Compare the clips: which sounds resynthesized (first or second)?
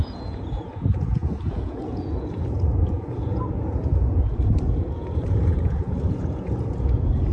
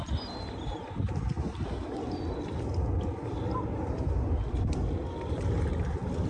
first